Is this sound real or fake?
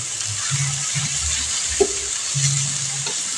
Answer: real